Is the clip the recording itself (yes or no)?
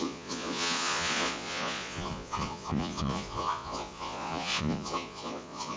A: no